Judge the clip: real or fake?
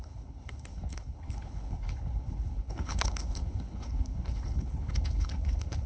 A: fake